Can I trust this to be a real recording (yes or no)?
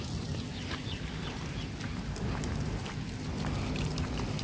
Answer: yes